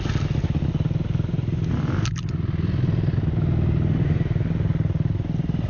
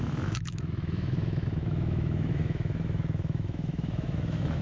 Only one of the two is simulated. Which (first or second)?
second